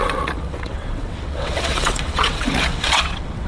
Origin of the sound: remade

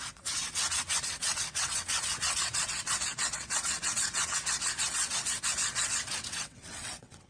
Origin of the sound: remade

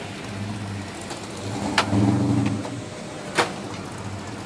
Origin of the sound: recorded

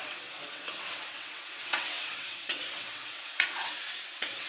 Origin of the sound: remade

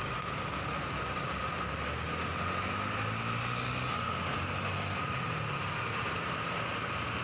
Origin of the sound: recorded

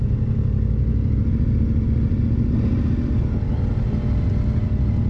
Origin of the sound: recorded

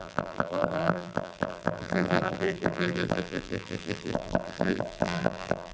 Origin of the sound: remade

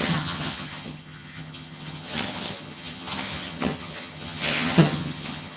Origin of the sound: remade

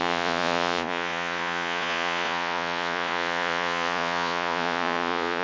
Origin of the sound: remade